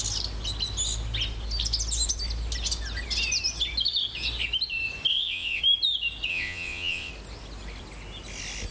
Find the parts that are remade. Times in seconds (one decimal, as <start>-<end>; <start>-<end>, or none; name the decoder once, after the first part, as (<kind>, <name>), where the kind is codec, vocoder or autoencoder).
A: 5.1-5.6 (vocoder, WaveNeXt); 6.3-7.1